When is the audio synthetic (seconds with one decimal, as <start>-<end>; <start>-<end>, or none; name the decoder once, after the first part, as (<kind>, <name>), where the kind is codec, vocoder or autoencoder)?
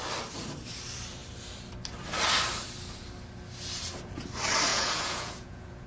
4.7-5.9 (vocoder, Vocos)